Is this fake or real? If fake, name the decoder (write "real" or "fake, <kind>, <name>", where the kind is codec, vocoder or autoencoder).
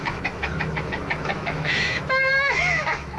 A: fake, autoencoder, DAC-VAE